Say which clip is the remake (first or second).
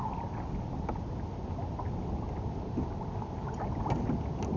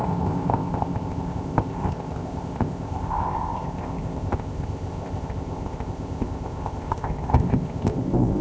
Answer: second